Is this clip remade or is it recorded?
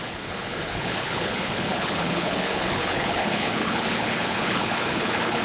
remade